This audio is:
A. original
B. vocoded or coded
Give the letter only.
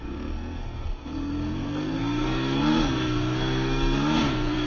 B